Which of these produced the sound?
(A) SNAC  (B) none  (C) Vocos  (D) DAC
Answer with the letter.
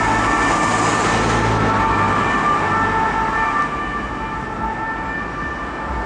B